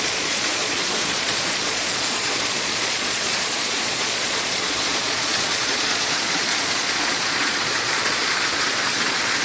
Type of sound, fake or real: fake